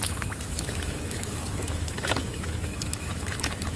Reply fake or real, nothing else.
fake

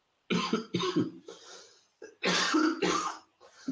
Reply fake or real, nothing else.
real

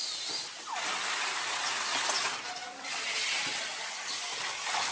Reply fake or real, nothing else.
real